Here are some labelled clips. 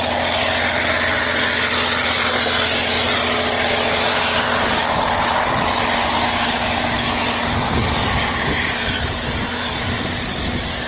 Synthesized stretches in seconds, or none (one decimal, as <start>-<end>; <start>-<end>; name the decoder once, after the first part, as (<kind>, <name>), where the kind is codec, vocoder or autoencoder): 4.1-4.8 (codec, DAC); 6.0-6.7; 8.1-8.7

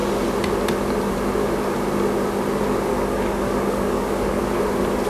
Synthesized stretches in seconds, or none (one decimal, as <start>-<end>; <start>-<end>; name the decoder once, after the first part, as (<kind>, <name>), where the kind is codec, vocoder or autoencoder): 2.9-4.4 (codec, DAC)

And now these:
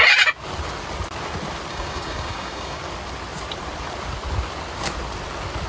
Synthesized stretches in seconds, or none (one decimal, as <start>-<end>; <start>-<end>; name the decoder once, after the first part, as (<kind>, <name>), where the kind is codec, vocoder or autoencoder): 1.7-2.8 (codec, DAC)

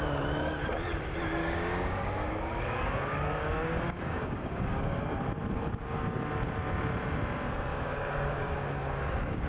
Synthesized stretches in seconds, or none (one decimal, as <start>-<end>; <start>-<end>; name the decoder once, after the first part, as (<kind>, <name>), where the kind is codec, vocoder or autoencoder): 1.4-5.0 (codec, DAC); 7.7-9.5

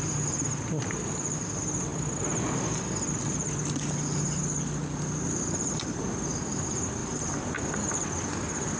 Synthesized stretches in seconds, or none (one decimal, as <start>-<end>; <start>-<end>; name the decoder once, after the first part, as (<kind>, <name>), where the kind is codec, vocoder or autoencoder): none

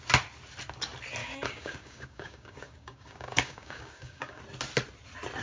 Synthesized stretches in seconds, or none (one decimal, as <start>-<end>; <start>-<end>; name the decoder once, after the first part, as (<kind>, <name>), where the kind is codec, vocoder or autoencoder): 1.2-4.4 (codec, DAC)